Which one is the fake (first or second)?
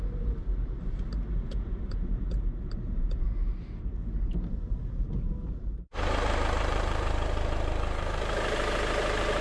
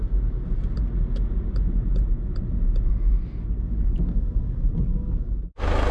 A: first